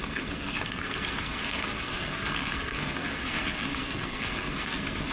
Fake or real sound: fake